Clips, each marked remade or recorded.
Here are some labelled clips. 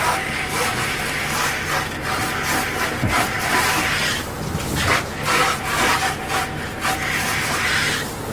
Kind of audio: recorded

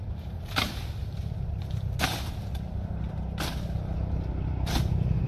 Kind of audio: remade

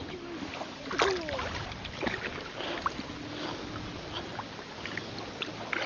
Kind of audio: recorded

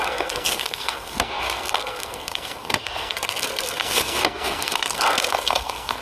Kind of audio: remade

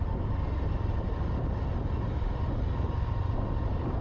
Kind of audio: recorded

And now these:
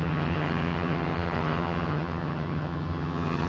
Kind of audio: remade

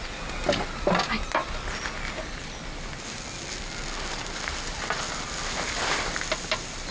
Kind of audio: recorded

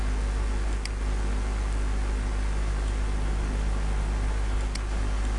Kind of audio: recorded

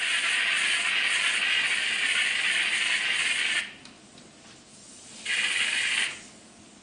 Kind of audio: recorded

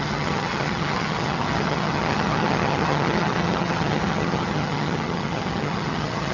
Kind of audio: remade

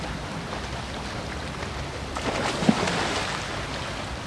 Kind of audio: recorded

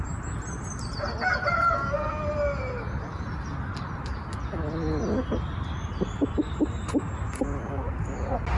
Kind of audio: recorded